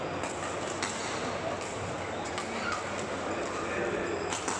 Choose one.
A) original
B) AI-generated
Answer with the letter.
A